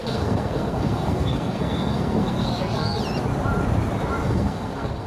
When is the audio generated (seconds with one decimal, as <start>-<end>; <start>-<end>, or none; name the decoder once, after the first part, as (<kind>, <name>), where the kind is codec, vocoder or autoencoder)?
0.0-3.0 (codec, SNAC); 4.2-5.1